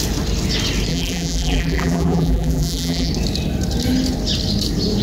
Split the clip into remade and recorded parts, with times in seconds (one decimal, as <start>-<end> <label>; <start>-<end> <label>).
0.0-0.9 recorded; 0.9-3.1 remade; 3.1-5.0 recorded